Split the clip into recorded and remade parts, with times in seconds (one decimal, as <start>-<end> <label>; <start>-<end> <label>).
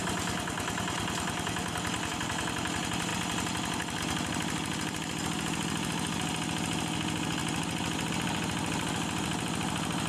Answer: 0.0-10.1 recorded